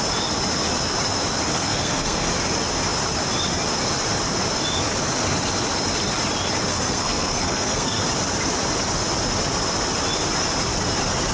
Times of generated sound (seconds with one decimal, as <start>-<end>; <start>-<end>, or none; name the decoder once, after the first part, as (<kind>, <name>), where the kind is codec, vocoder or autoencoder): 1.5-2.3 (codec, SNAC); 6.7-8.0